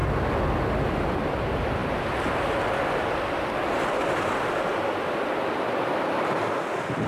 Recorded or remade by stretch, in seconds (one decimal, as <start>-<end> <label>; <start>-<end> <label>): 0.0-7.1 recorded